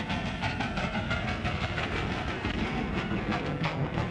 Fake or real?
fake